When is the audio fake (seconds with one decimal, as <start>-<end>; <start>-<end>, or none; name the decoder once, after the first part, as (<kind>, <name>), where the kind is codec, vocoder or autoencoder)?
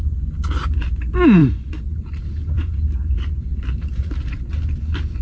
1.4-4.5 (vocoder, BigVGAN v2)